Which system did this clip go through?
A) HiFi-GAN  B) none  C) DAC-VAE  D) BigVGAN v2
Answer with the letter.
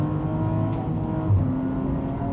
B